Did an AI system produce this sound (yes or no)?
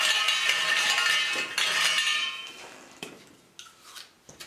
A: no